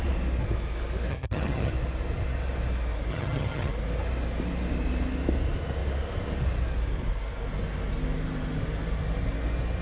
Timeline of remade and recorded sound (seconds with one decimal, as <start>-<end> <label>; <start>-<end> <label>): 0.0-1.1 recorded; 1.1-1.7 remade; 1.7-3.1 recorded; 3.1-3.7 remade; 3.7-9.8 recorded